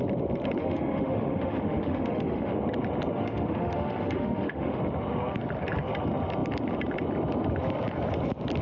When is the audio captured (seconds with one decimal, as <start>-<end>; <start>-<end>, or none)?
0.0-0.6; 2.6-3.1; 4.8-8.6